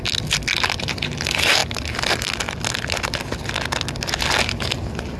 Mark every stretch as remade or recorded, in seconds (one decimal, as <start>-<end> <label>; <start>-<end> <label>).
0.0-5.2 recorded